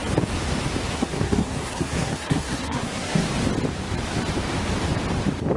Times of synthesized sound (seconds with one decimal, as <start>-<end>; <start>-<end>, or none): 0.9-3.2

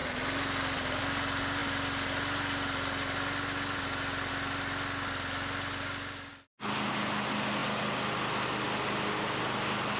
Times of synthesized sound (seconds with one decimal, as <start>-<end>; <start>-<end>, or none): none

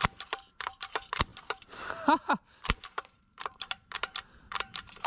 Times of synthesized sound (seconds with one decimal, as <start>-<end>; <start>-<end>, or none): 0.0-5.1

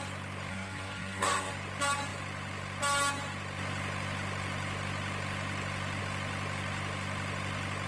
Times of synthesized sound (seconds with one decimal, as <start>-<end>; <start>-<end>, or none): 0.5-1.5

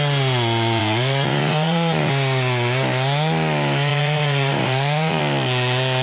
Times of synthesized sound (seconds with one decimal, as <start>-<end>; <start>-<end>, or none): 0.8-2.1; 3.9-5.2

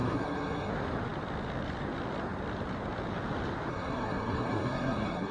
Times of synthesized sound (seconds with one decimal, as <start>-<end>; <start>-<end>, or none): 0.0-0.7; 3.7-5.3

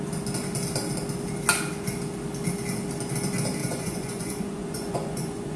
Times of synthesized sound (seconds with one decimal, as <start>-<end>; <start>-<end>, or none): 3.6-5.6